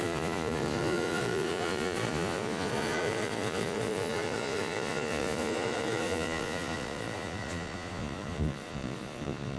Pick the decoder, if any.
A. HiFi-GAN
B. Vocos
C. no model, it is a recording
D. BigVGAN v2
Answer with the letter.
B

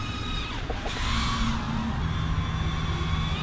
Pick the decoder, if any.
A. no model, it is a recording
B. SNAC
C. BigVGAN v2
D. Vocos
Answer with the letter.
A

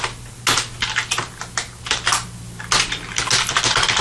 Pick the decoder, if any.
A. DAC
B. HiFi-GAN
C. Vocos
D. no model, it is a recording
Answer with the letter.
D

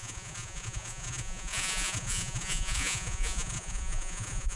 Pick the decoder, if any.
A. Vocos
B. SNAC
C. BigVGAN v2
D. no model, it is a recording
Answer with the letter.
A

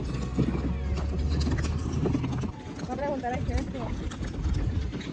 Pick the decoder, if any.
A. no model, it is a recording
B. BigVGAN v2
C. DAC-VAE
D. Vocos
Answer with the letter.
A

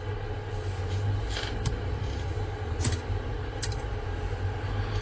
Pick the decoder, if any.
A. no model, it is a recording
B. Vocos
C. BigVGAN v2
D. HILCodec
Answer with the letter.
A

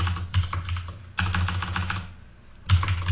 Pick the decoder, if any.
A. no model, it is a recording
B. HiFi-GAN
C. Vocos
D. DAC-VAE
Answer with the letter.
A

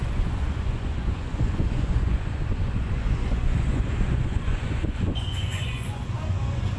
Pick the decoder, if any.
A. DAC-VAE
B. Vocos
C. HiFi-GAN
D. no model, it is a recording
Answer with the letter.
B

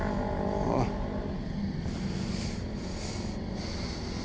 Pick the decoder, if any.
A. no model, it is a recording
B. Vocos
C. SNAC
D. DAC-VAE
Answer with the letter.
A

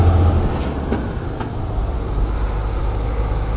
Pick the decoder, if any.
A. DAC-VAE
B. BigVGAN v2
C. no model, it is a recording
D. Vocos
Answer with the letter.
C